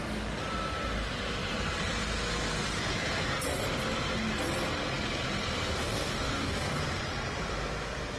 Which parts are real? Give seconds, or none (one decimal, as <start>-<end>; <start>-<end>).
0.0-5.8; 6.8-8.2